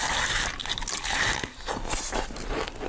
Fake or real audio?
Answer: real